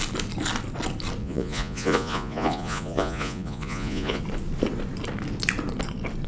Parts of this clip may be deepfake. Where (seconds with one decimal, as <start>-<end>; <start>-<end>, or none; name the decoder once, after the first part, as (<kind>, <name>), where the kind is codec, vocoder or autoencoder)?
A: 1.2-4.2 (vocoder, Vocos)